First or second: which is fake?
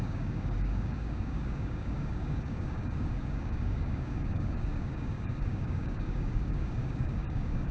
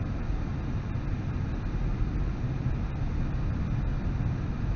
first